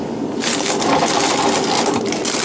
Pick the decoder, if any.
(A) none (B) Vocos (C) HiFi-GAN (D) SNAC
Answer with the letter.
A